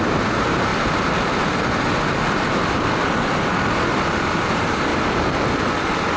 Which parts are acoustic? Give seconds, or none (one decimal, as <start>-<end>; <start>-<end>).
0.7-4.4; 4.9-6.2